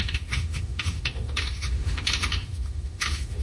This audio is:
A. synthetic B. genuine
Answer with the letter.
A